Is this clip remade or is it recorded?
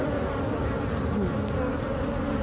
recorded